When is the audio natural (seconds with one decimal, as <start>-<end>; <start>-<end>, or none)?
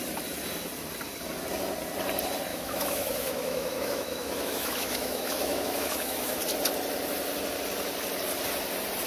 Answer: 0.0-2.5; 6.4-9.1